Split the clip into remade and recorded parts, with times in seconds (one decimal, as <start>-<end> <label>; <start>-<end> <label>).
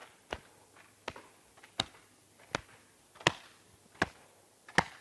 0.0-5.0 recorded